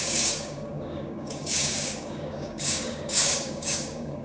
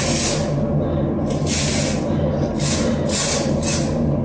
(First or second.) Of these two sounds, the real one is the second